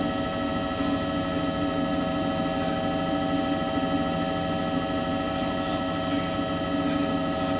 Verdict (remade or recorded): recorded